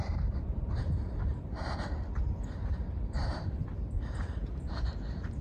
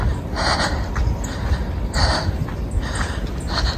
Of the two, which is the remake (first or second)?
first